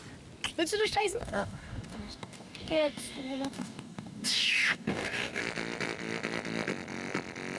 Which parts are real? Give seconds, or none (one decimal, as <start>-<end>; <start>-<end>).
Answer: 0.0-0.8; 5.4-7.6